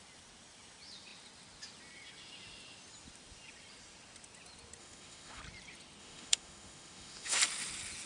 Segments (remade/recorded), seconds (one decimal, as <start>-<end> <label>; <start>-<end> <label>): 0.0-4.8 recorded; 4.8-5.4 remade; 5.4-6.0 recorded; 6.0-7.4 remade; 7.4-8.1 recorded